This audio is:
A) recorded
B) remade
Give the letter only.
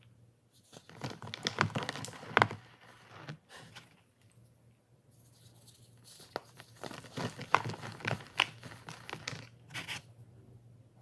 A